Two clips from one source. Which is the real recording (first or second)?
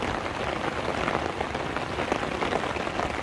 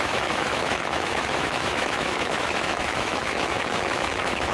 first